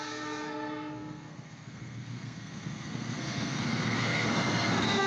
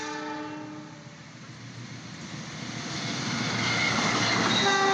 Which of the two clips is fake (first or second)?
first